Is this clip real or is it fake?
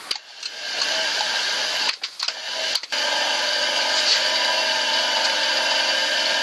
fake